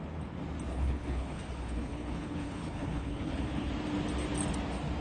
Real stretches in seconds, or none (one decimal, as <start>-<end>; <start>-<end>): 0.0-0.7; 3.7-5.0